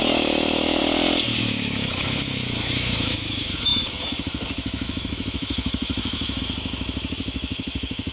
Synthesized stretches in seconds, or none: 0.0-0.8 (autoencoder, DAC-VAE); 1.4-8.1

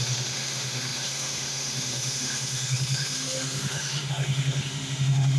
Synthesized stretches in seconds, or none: 0.0-5.4 (autoencoder, DAC-VAE)